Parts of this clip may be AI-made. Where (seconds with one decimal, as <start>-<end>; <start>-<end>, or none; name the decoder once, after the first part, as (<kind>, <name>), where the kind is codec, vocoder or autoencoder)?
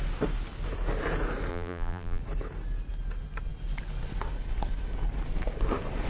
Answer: 1.5-2.2 (vocoder, BigVGAN v2)